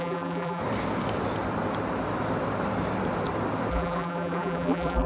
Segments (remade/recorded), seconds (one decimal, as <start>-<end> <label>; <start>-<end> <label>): 0.0-0.6 remade; 0.6-3.7 recorded; 3.7-5.1 remade